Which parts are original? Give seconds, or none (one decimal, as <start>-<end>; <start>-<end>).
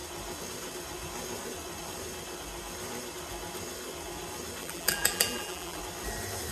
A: 0.0-4.6; 5.8-6.5